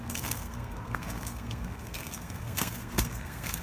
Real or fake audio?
fake